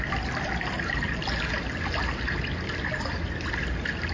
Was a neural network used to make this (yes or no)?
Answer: no